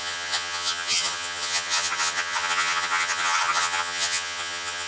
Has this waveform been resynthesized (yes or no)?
yes